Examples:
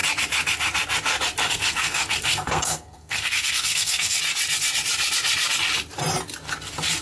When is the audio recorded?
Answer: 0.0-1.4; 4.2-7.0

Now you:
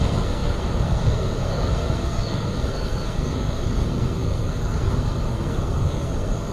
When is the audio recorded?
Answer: none

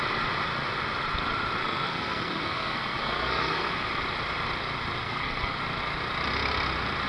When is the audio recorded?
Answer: 0.0-1.6; 3.7-5.0; 5.6-7.1